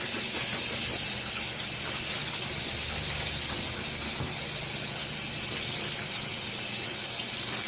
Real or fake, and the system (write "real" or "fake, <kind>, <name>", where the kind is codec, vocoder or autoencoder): real